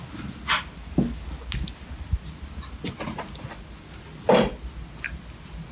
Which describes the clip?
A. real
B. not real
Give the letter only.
A